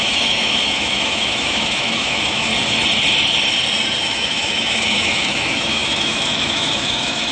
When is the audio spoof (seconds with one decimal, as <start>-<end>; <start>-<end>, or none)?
0.0-2.5; 4.0-7.3